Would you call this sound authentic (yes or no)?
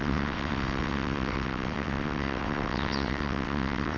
no